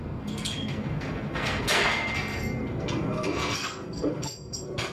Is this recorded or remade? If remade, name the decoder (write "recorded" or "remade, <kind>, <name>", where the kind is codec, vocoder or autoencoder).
remade, codec, SNAC